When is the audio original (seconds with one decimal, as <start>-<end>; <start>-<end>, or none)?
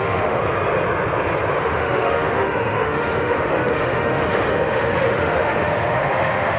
0.4-1.6